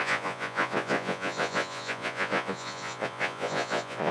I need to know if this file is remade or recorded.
remade